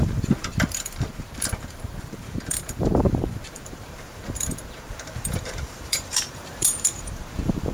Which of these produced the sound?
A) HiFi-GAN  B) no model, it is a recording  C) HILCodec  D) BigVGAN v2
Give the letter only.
D